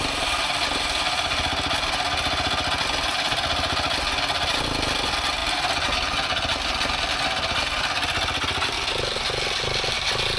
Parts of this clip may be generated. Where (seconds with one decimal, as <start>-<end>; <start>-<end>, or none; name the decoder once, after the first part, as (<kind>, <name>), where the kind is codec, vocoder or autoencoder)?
none

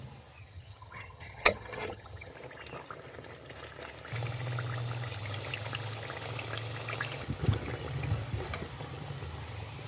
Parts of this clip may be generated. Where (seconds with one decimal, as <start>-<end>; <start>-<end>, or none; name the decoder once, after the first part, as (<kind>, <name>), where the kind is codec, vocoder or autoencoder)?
0.4-2.3 (vocoder, HiFi-GAN)

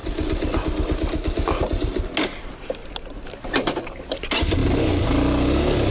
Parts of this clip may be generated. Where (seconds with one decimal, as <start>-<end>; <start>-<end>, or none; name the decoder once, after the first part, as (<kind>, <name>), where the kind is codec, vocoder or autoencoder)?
none

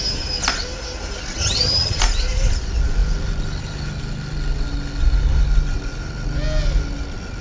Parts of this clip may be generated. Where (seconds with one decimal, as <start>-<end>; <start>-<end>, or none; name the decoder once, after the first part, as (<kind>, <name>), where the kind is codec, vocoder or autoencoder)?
1.4-2.0 (vocoder, HiFi-GAN)